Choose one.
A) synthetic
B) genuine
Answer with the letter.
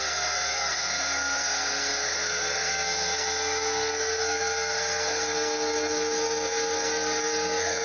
A